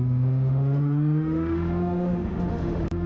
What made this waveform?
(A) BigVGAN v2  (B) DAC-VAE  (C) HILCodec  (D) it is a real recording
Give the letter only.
B